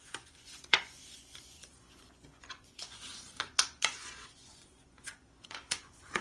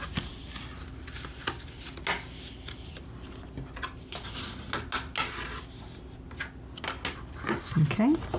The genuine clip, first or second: second